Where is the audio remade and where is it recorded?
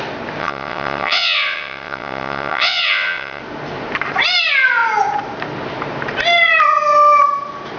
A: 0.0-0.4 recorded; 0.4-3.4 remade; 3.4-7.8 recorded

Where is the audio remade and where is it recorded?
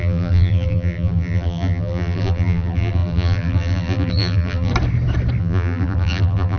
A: 0.0-4.7 remade; 4.7-5.4 recorded; 5.4-6.6 remade